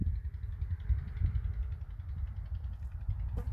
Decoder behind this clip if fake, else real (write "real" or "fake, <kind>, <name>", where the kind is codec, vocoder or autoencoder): real